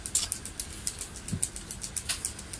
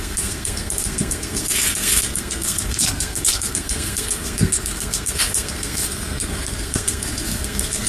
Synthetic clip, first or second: second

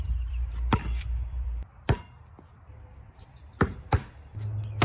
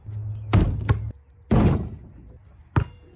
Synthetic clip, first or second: first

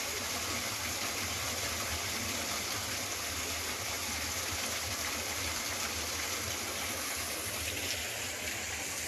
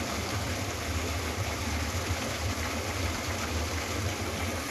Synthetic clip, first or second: second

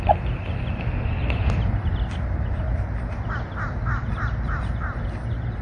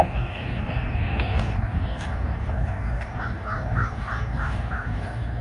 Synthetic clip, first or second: second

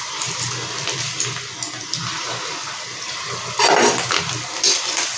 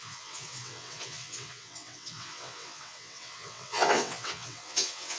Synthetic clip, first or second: second